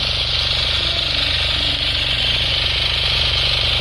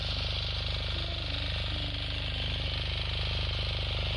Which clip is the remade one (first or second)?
first